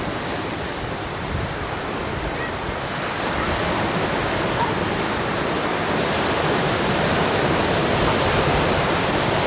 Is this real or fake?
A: real